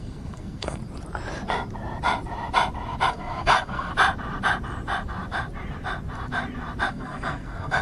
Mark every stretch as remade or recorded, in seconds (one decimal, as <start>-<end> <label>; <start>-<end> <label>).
0.0-0.8 remade; 0.8-3.1 recorded; 3.1-3.9 remade; 3.9-6.9 recorded; 6.9-7.8 remade